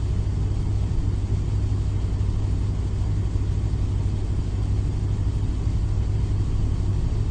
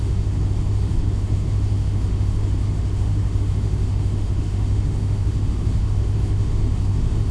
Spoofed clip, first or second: second